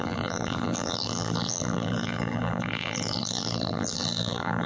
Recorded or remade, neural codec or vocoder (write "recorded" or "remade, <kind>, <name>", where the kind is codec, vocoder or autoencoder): remade, vocoder, BigVGAN v2